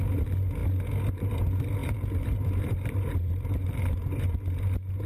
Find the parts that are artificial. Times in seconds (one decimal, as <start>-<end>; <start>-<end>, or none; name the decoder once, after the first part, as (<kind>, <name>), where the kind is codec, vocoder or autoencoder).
1.8-5.1 (vocoder, BigVGAN v2)